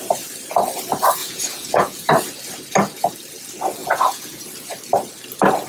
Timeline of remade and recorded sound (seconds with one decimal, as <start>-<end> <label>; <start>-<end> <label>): 0.0-1.2 recorded; 1.2-2.1 remade; 2.1-3.8 recorded; 3.8-4.4 remade; 4.4-5.7 recorded